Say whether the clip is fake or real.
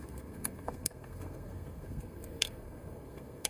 fake